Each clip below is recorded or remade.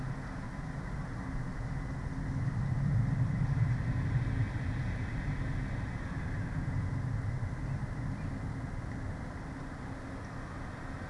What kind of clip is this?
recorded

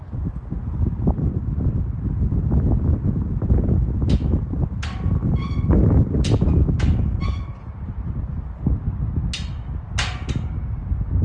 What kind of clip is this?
recorded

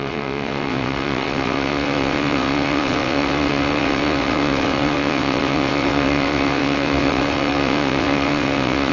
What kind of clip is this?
remade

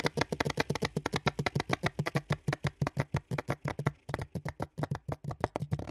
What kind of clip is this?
recorded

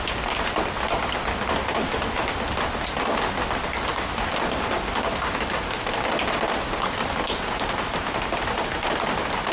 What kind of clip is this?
recorded